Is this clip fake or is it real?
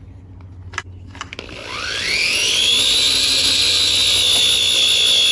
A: real